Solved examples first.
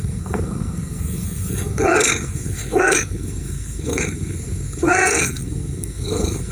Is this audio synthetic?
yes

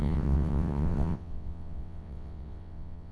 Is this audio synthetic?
yes